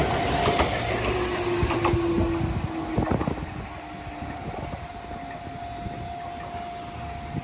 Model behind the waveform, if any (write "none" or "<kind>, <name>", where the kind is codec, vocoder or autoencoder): none